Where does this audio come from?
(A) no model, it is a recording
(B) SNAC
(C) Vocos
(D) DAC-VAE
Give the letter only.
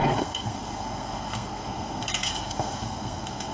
B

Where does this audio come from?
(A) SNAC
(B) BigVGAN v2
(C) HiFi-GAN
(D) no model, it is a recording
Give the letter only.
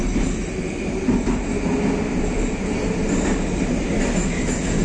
D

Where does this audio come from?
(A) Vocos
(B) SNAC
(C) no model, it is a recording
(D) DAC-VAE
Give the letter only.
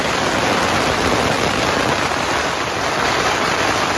C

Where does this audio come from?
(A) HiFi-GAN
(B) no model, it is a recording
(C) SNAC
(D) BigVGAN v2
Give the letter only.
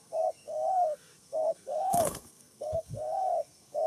C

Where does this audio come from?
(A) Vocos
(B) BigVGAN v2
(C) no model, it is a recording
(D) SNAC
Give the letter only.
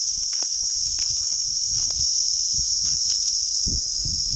D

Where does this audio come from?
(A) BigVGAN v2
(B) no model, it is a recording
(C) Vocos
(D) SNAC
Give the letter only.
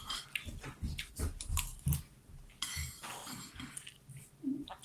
B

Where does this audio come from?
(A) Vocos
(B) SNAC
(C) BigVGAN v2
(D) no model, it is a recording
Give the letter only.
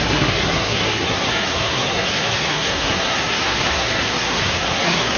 B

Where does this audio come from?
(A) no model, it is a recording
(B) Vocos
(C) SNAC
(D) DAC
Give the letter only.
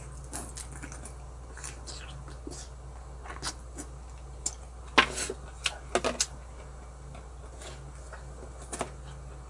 A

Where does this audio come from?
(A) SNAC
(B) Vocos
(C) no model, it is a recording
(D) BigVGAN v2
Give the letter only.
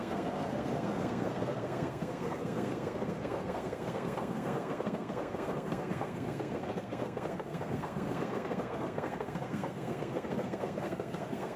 A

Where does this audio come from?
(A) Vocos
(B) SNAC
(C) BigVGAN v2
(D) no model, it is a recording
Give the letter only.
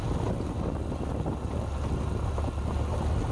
D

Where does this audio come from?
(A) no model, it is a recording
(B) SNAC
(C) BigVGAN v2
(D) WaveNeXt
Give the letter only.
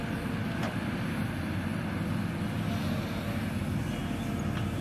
A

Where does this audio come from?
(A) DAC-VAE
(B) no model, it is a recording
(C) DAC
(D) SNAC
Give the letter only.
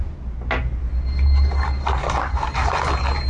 B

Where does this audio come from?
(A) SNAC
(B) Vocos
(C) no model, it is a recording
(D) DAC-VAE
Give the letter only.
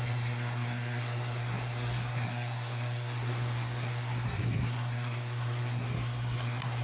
A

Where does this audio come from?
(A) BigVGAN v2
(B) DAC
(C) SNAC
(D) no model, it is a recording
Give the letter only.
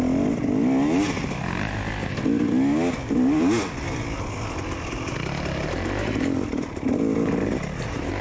D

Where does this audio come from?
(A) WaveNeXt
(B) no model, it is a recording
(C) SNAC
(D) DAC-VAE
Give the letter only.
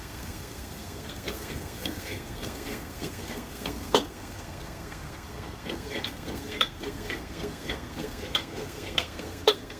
C